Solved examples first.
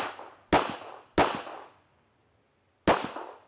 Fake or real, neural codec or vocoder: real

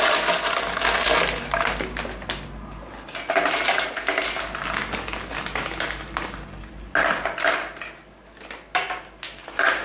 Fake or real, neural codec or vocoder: real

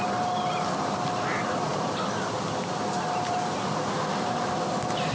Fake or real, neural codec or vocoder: fake, vocoder, BigVGAN v2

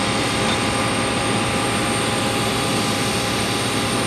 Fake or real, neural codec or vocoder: real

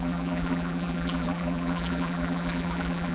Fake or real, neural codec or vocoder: fake, vocoder, BigVGAN v2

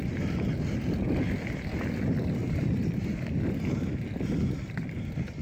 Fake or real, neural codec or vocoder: real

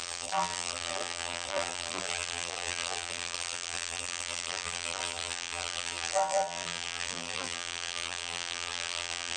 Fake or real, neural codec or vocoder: fake, vocoder, BigVGAN v2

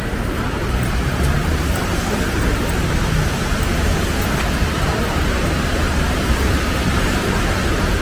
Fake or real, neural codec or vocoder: fake, vocoder, BigVGAN v2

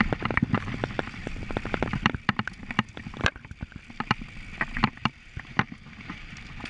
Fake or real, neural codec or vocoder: fake, vocoder, BigVGAN v2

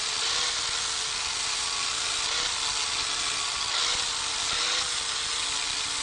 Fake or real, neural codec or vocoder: real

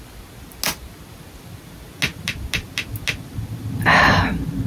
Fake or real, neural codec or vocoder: real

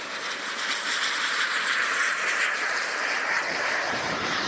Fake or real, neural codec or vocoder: fake, vocoder, BigVGAN v2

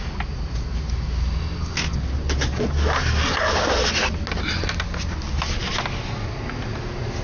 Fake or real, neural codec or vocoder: real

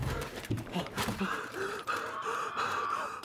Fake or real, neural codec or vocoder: fake, vocoder, BigVGAN v2